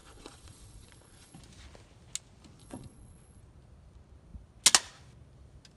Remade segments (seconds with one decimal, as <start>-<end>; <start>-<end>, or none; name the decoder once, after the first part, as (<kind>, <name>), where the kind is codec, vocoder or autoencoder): 0.0-1.4 (vocoder, Vocos); 2.6-3.4